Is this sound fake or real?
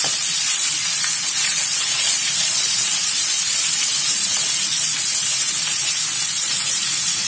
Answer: fake